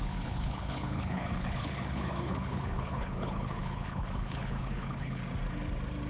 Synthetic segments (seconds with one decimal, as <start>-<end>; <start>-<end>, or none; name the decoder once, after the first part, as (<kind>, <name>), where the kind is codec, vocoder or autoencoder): 0.0-5.2 (codec, HILCodec)